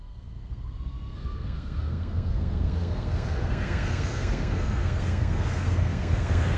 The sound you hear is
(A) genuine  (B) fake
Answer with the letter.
B